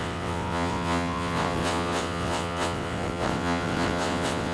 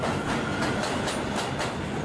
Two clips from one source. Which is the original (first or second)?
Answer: second